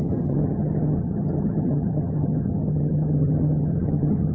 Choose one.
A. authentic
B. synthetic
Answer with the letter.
B